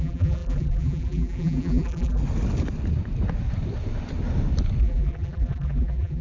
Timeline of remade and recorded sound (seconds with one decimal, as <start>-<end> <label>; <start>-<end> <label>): 0.0-2.2 remade; 2.2-4.8 recorded; 4.8-6.2 remade